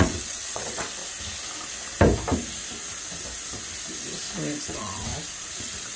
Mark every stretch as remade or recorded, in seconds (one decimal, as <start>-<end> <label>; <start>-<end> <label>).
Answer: 0.0-1.0 remade; 1.0-4.6 recorded; 4.6-5.1 remade; 5.1-5.6 recorded; 5.6-6.0 remade